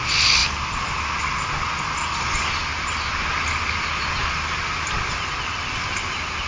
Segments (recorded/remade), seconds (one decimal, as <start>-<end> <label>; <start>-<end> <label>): 0.0-6.5 recorded